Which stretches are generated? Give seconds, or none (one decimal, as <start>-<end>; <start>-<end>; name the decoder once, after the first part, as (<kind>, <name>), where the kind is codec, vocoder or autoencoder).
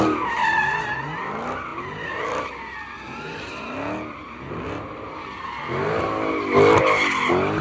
none